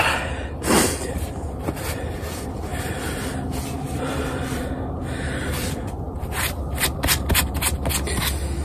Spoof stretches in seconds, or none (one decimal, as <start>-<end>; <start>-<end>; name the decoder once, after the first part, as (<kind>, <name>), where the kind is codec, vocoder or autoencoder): 2.7-7.4 (vocoder, BigVGAN v2)